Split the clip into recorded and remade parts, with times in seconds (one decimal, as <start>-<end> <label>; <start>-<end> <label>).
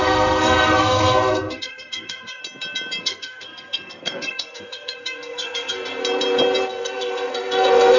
0.0-2.4 remade; 2.4-3.0 recorded; 3.0-6.0 remade; 6.0-6.7 recorded; 6.7-8.0 remade